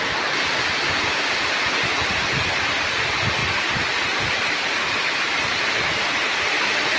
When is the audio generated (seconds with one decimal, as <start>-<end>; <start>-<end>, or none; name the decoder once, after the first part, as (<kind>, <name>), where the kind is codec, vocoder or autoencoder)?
none